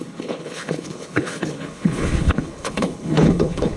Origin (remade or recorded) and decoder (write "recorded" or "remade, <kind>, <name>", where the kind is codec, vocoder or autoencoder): remade, codec, HILCodec